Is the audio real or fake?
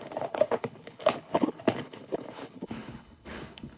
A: fake